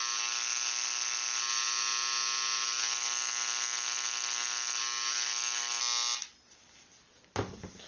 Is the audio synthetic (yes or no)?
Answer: no